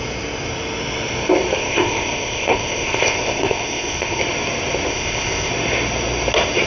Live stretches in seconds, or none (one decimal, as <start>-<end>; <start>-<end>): 0.0-1.6; 4.2-4.9; 5.5-6.7

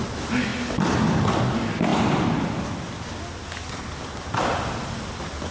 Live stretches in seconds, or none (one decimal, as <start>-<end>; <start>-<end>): 0.0-5.5

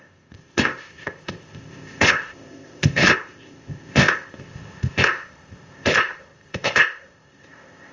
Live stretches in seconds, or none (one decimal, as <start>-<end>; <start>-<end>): none